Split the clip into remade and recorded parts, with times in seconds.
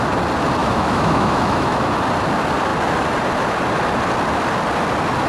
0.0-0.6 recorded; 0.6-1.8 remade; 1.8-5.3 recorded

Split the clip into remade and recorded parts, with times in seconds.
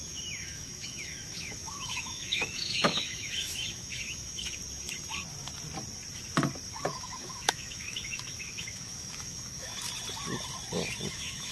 0.0-4.6 remade; 4.6-6.7 recorded; 6.7-9.7 remade; 9.7-11.1 recorded; 11.1-11.5 remade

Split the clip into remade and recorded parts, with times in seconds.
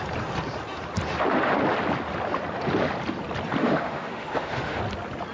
0.0-3.6 recorded; 3.6-4.8 remade; 4.8-5.3 recorded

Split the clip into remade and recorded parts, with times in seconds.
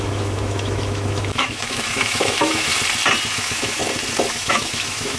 0.0-2.7 remade; 2.7-3.3 recorded; 3.3-3.8 remade; 3.8-4.3 recorded; 4.3-5.2 remade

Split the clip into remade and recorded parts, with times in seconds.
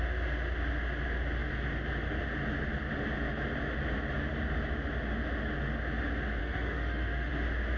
0.0-6.4 recorded; 6.4-7.3 remade; 7.3-7.8 recorded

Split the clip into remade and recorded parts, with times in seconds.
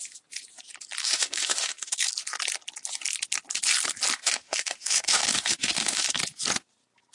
0.0-1.0 recorded; 1.0-2.1 remade; 2.1-4.2 recorded; 4.2-6.2 remade; 6.2-7.1 recorded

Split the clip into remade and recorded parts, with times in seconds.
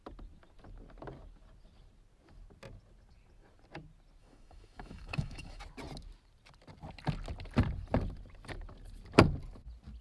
0.0-4.2 recorded; 4.2-5.6 remade; 5.6-10.0 recorded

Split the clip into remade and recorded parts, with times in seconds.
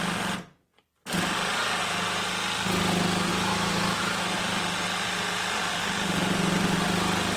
0.0-3.3 recorded; 3.3-4.4 remade; 4.4-7.4 recorded